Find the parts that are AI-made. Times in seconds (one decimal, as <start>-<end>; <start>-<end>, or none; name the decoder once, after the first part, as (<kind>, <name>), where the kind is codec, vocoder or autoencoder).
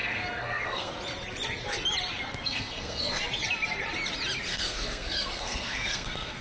0.0-0.9 (codec, SNAC); 2.4-3.2; 4.5-6.4